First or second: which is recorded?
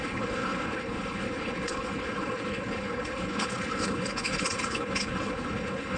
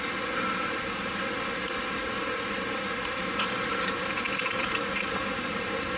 second